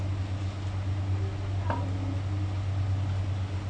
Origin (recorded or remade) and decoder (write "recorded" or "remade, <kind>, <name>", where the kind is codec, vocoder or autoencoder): recorded